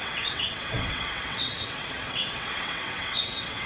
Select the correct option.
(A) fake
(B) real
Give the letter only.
A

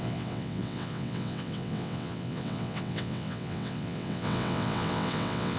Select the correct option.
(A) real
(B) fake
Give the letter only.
B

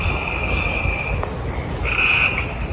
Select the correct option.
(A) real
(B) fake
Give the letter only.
A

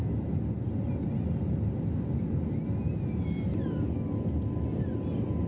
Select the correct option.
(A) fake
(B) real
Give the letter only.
B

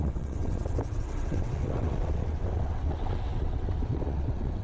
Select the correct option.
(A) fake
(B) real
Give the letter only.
A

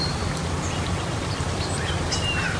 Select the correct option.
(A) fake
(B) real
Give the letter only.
B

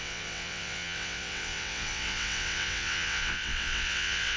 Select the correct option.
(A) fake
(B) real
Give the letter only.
A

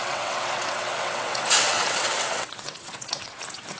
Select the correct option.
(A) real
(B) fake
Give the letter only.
B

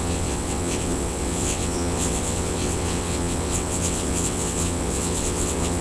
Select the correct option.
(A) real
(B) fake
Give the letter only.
B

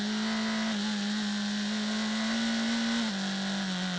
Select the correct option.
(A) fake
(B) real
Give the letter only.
B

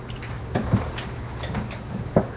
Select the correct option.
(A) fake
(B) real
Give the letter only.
B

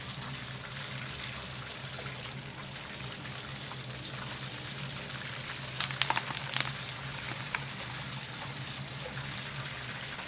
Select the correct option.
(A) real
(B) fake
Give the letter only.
A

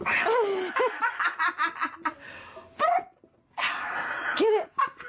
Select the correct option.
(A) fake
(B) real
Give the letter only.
B